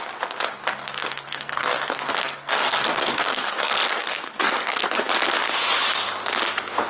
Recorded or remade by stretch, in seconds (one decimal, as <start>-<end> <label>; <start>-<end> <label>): 0.0-0.8 recorded; 0.8-4.9 remade; 4.9-6.9 recorded